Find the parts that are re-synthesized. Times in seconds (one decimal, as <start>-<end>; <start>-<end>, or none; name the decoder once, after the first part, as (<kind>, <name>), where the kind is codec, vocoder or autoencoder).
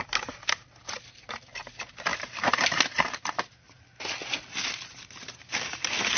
0.8-1.6 (vocoder, BigVGAN v2); 2.1-2.8